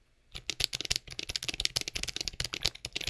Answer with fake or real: real